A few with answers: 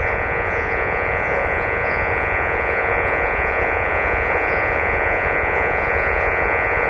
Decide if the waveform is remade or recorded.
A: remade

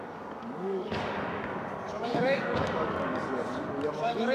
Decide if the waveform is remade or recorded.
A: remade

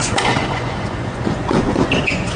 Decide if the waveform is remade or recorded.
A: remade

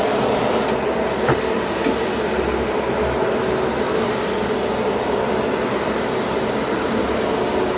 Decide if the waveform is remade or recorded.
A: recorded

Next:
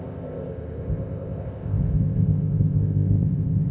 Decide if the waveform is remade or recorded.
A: remade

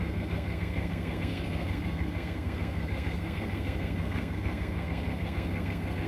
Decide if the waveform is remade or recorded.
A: remade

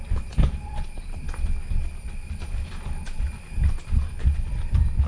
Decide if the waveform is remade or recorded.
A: recorded